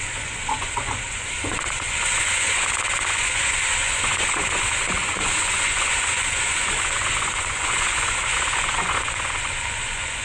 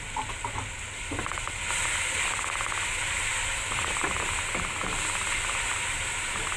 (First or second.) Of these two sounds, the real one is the second